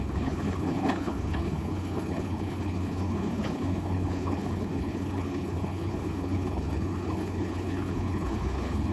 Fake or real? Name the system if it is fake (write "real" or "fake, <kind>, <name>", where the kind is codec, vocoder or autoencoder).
fake, codec, HILCodec